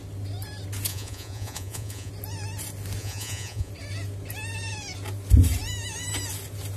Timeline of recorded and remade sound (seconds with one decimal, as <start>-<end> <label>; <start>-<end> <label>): 0.0-0.9 recorded; 0.9-2.1 remade; 2.1-3.0 recorded; 3.0-3.7 remade; 3.7-6.8 recorded